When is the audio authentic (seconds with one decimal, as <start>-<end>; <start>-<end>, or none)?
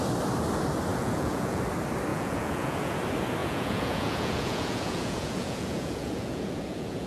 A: 0.0-0.9; 1.6-2.1; 3.0-3.4